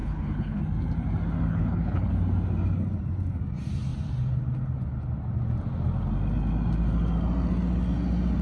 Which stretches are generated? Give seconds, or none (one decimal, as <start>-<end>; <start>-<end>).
0.0-0.6; 1.5-2.1